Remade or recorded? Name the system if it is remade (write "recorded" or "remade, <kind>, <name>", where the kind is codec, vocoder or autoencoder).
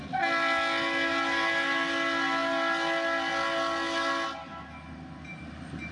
recorded